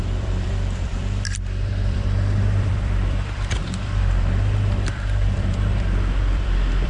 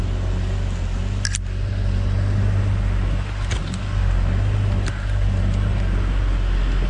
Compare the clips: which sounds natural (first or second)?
second